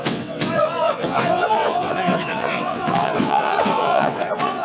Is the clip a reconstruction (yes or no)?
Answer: yes